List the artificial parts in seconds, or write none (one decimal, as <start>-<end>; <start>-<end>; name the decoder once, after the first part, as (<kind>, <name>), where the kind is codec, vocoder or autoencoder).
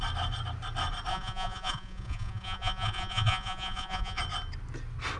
1.1-4.2 (vocoder, Vocos)